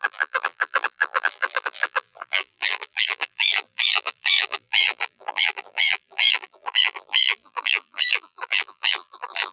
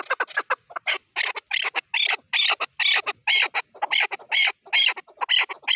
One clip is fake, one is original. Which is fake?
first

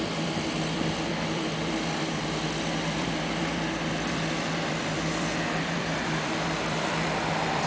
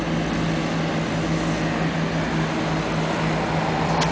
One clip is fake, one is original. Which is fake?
first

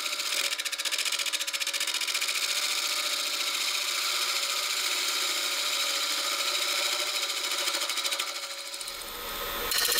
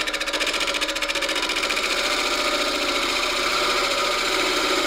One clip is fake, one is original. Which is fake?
second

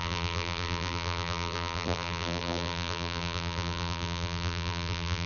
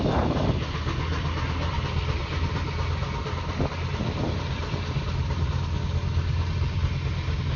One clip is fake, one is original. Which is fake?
first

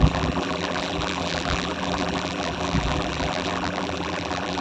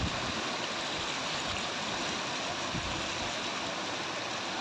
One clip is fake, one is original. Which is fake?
first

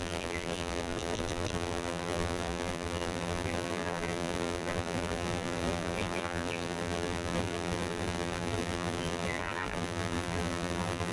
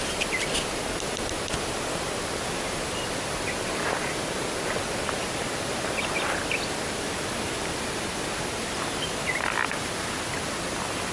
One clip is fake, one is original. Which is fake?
first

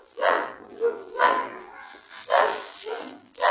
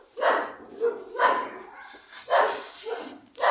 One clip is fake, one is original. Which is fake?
first